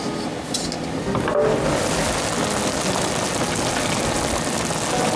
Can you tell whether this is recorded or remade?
recorded